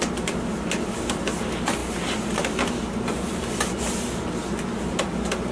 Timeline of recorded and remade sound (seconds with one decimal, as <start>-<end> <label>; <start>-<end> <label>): 0.0-5.5 recorded